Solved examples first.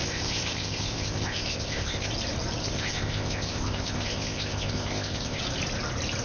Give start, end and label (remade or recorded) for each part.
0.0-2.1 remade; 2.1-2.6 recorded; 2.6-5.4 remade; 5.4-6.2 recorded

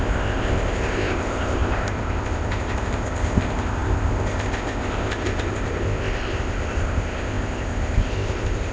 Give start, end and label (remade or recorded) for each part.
0.0-8.7 remade

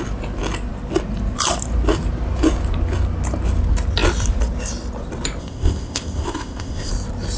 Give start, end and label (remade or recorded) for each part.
0.0-5.4 recorded; 5.4-6.9 remade; 6.9-7.4 recorded

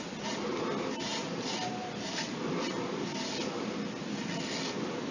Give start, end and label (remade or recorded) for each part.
0.0-5.1 recorded